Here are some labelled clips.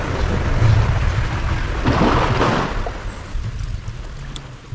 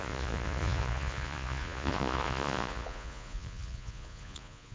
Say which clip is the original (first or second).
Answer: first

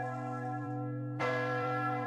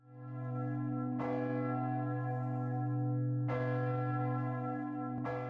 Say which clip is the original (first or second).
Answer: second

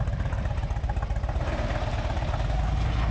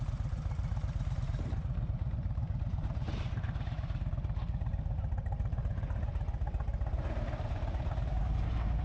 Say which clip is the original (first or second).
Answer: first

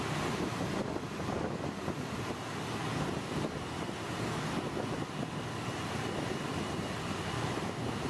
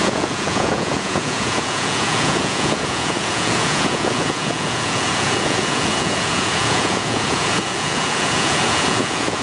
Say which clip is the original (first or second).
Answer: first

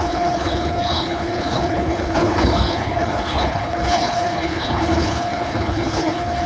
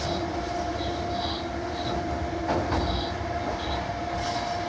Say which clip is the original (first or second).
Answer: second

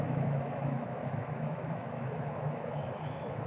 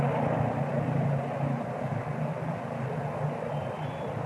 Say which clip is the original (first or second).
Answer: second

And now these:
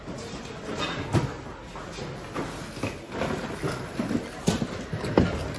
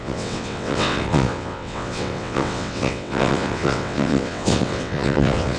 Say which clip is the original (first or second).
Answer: first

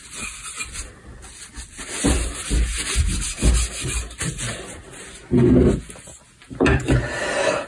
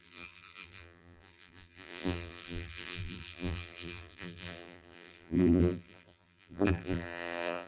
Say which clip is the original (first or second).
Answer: first